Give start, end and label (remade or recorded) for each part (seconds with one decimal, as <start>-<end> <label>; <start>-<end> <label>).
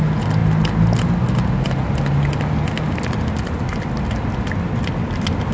0.0-5.5 recorded